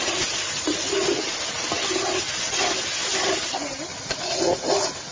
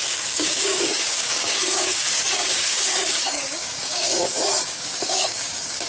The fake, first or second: second